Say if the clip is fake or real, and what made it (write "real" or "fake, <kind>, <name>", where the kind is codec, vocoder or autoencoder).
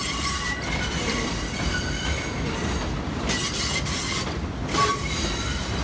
real